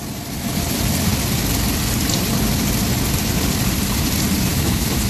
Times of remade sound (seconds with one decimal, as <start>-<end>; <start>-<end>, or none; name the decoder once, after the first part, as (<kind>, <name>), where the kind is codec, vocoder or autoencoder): 4.5-5.1 (autoencoder, DAC-VAE)